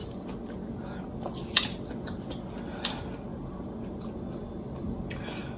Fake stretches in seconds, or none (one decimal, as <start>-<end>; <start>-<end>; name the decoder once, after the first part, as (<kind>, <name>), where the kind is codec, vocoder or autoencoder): 3.3-4.0 (vocoder, BigVGAN v2)

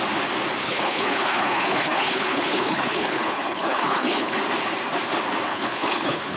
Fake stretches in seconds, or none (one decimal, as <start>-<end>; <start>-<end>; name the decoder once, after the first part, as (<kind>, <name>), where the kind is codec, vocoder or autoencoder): 0.6-4.4 (codec, HILCodec); 5.5-6.4

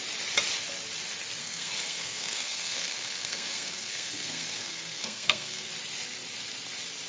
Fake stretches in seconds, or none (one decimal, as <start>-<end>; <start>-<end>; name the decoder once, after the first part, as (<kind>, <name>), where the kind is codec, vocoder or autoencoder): 1.4-5.7 (codec, SNAC)

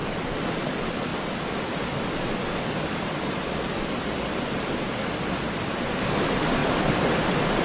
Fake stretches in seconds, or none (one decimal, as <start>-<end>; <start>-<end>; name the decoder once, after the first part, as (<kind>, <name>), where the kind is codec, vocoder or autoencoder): 0.0-0.7 (vocoder, BigVGAN v2); 6.6-7.6

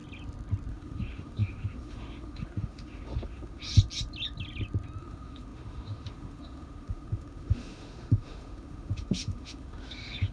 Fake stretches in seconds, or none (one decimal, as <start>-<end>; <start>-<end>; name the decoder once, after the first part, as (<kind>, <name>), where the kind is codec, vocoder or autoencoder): 0.7-3.6 (autoencoder, DAC-VAE); 5.0-10.3

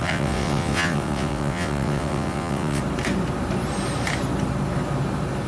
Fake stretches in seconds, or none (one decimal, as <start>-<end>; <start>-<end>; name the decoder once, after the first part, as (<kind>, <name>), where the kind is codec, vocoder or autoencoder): 0.0-2.8 (vocoder, WaveNeXt)